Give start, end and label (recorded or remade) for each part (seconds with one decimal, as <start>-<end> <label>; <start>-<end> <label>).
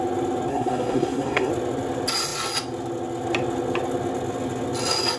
0.0-0.5 recorded; 0.5-1.5 remade; 1.5-5.2 recorded